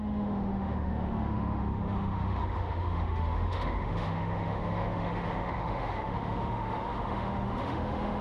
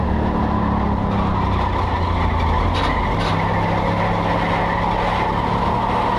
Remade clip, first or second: first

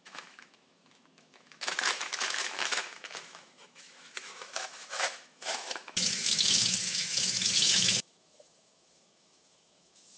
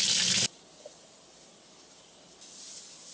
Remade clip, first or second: first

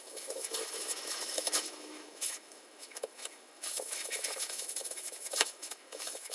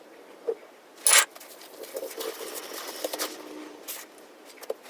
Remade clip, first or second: first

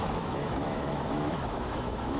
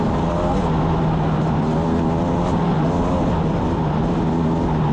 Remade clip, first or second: first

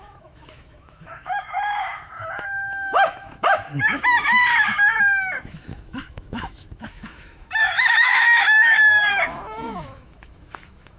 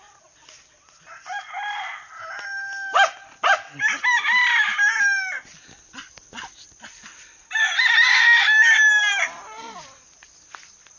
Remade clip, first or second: first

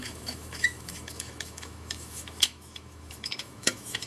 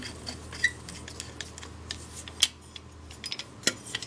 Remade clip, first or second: first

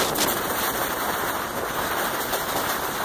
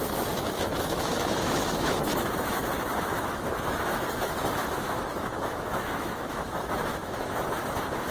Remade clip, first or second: second